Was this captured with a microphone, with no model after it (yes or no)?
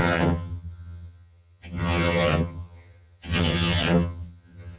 no